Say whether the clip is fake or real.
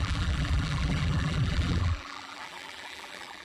fake